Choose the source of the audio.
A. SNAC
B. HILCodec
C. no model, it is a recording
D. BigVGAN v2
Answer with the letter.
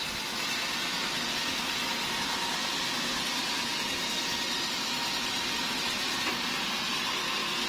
C